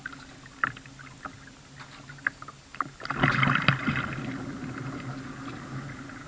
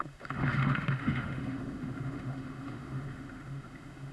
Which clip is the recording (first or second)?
first